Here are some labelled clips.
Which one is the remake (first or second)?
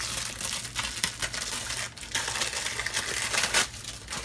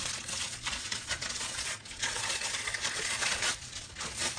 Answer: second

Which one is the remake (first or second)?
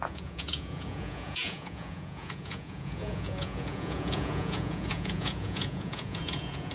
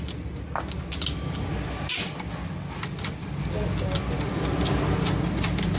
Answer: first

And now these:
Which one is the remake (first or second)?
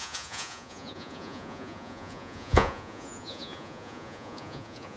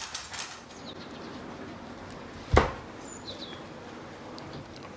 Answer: first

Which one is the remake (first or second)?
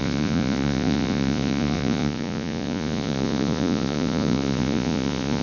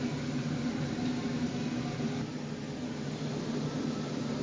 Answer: first